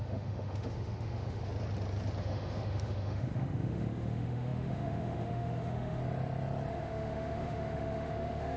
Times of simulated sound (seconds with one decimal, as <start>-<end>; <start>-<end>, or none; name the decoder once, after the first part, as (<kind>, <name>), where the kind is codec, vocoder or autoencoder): 0.0-1.4 (autoencoder, DAC-VAE); 2.2-6.0; 6.7-8.6